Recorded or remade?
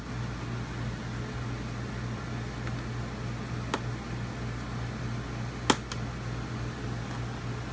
recorded